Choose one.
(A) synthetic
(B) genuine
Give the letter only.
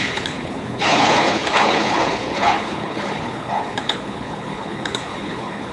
A